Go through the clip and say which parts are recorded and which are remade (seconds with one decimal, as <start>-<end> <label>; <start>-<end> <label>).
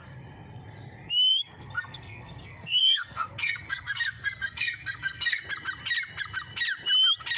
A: 0.0-1.3 recorded; 1.3-5.4 remade; 5.4-7.4 recorded